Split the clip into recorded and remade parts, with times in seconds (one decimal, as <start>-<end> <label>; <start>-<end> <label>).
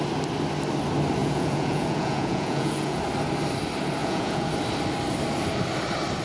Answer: 0.0-1.2 recorded; 1.2-3.0 remade; 3.0-4.0 recorded; 4.0-4.5 remade; 4.5-6.2 recorded